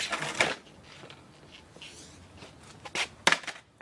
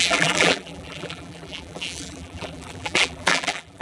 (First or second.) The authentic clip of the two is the first